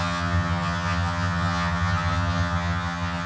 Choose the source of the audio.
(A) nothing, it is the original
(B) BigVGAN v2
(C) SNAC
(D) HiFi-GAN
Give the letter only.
D